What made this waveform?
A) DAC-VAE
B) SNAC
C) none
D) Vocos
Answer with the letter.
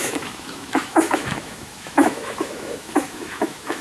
A